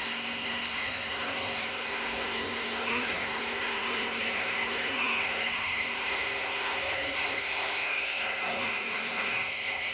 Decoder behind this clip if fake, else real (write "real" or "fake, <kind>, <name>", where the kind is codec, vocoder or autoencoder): fake, codec, SNAC